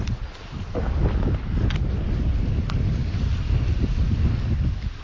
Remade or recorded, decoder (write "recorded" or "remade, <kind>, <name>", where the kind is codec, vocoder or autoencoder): recorded